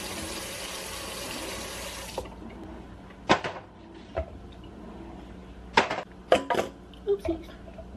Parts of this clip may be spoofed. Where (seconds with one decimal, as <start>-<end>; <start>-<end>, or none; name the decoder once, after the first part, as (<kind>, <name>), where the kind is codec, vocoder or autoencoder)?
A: none

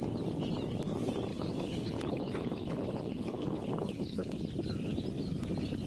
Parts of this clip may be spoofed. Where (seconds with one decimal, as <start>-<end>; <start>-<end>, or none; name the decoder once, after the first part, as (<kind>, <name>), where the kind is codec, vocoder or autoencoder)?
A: 1.3-4.4 (codec, HILCodec)

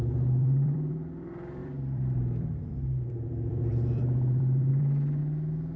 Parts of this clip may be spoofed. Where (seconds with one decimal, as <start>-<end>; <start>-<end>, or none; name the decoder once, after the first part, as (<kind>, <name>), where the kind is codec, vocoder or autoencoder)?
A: 0.0-5.2 (vocoder, BigVGAN v2)

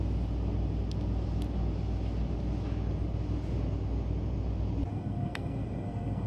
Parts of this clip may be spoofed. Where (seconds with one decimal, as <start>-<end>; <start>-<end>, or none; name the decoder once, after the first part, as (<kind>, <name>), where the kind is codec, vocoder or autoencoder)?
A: 4.9-6.3 (codec, SNAC)

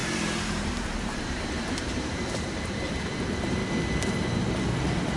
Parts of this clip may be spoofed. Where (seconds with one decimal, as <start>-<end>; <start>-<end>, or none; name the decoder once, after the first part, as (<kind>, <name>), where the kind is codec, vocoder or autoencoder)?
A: 0.0-3.1 (vocoder, BigVGAN v2)

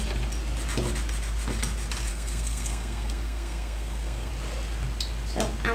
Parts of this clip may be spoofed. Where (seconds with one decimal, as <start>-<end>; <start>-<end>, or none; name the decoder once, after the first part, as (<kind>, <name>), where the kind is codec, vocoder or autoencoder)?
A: 2.1-4.3 (codec, SNAC)